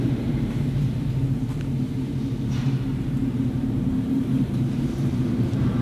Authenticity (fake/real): fake